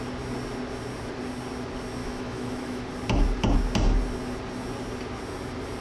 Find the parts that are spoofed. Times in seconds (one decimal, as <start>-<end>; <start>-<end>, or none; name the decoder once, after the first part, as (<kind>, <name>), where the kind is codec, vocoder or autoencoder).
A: 2.0-2.8 (autoencoder, DAC-VAE)